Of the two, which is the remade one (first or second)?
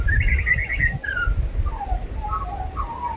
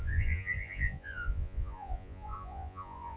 second